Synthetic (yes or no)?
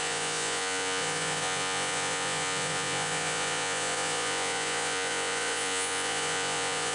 yes